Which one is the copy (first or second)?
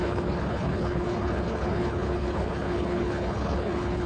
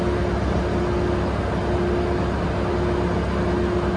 first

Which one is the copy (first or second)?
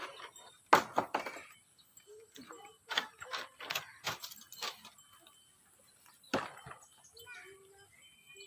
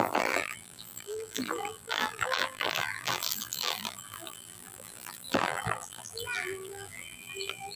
second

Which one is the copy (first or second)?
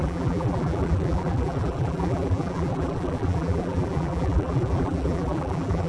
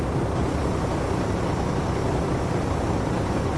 first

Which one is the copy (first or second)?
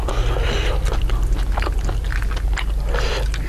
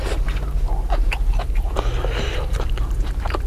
second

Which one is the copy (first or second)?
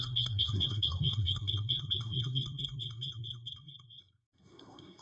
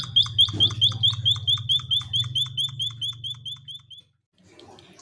first